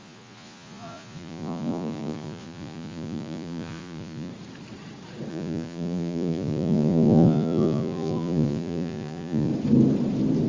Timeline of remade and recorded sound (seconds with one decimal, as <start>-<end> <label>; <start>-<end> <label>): 0.0-4.3 remade; 4.3-5.3 recorded; 5.3-9.5 remade; 9.5-10.5 recorded